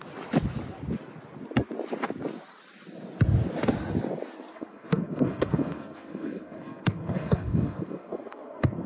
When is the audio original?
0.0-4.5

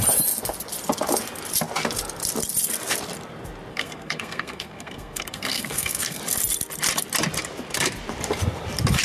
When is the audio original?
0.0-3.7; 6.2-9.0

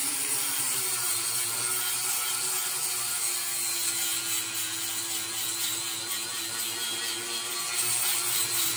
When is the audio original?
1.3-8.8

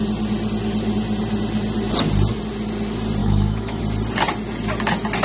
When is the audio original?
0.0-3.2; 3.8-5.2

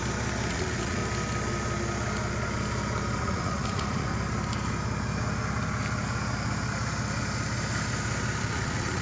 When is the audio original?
0.0-0.5; 1.0-3.2; 4.1-8.4

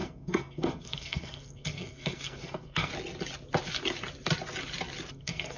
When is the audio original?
2.9-5.1